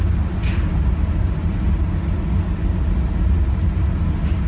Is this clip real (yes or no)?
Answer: yes